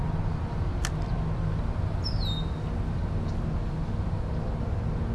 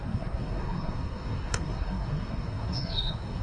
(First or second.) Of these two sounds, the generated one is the second